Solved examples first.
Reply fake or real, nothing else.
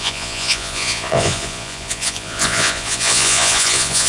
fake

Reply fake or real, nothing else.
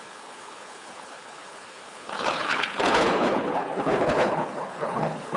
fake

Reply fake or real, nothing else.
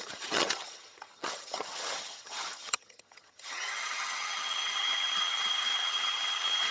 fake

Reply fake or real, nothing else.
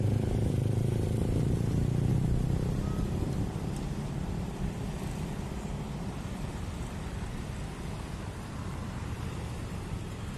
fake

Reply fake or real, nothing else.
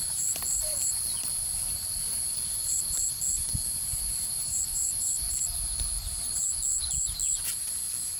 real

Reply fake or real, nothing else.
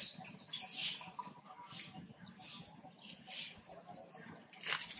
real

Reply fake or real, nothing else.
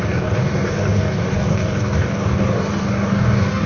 fake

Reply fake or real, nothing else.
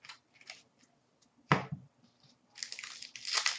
real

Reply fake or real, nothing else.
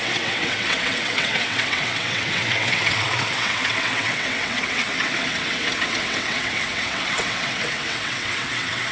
fake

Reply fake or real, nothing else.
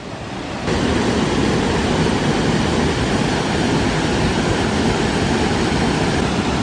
fake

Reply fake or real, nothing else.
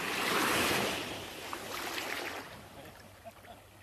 real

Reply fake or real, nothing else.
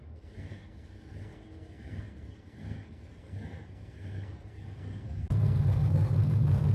fake